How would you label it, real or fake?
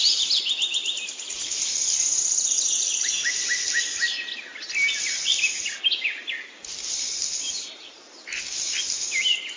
real